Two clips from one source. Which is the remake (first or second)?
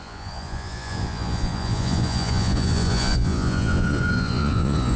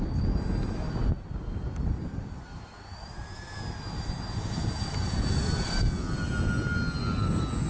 first